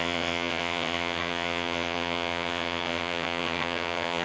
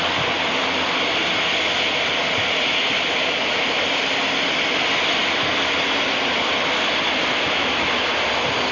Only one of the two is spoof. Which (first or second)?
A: first